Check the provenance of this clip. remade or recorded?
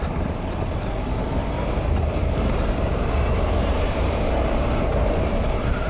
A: remade